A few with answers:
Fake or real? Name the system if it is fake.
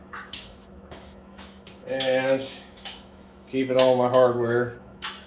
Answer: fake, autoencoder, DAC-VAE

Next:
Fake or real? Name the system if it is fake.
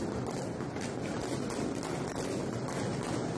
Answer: real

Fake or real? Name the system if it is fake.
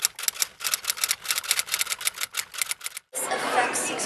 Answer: real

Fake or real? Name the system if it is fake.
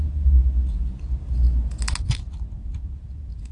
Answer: real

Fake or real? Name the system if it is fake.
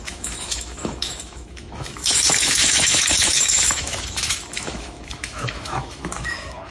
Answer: fake, autoencoder, DAC-VAE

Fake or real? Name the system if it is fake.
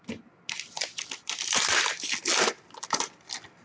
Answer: real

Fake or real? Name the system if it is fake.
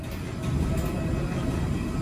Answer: real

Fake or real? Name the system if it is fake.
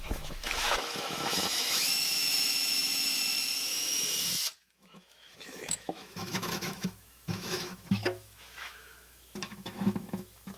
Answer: fake, autoencoder, DAC-VAE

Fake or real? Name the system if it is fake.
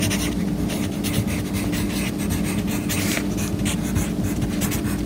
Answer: real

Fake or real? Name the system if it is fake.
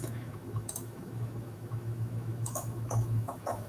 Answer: fake, autoencoder, DAC-VAE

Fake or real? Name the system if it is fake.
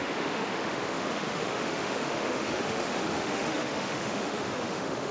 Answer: fake, autoencoder, DAC-VAE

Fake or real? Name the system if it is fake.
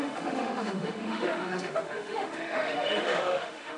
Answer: fake, autoencoder, DAC-VAE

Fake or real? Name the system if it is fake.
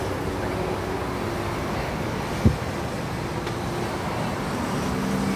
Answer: real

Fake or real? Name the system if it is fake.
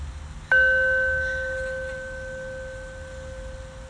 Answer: real